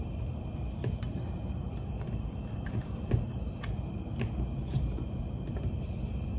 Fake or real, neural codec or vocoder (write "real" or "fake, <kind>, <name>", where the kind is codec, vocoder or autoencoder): fake, vocoder, BigVGAN v2